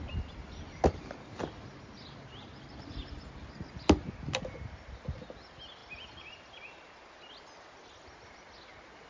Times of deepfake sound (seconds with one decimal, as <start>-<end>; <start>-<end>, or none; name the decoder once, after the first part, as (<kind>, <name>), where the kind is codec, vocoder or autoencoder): none

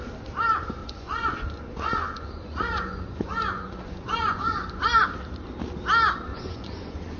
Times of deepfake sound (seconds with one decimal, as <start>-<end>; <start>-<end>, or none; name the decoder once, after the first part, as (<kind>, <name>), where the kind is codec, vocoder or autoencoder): 0.8-4.8 (vocoder, Vocos); 6.3-7.2

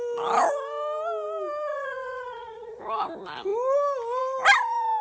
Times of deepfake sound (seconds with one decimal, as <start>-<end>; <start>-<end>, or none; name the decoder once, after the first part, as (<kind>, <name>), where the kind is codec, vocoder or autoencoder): 1.7-2.8 (vocoder, Vocos)

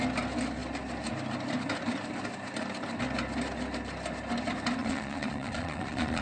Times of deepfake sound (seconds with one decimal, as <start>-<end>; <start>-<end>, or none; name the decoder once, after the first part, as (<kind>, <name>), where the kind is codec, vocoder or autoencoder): 4.8-6.2 (vocoder, Vocos)

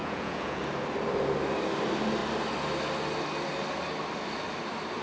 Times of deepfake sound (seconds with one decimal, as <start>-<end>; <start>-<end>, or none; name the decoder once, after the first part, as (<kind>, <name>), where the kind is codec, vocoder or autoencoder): 0.0-0.6 (vocoder, Vocos)